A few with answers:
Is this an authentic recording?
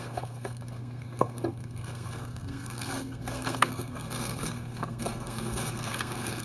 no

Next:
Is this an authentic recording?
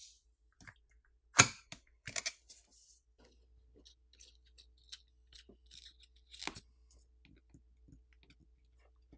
yes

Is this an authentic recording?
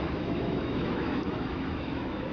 no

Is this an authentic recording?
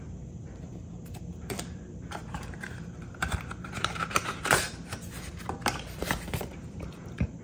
no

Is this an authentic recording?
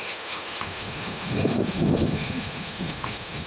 no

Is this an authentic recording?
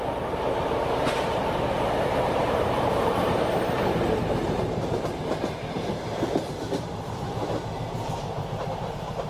no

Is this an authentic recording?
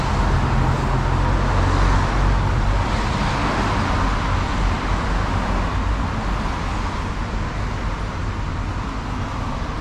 yes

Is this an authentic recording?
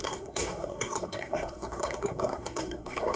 no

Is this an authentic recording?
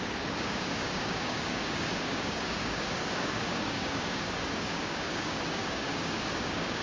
no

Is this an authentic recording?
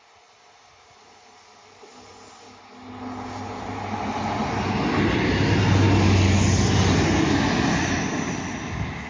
yes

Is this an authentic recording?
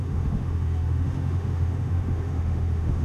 no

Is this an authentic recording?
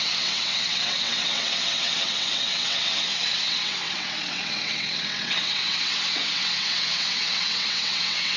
no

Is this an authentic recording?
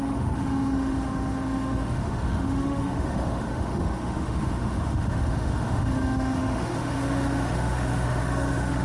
no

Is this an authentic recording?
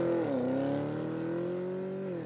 yes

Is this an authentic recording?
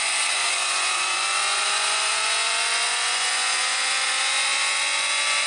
no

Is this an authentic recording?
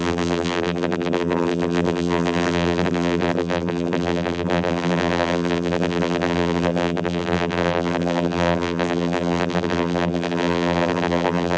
no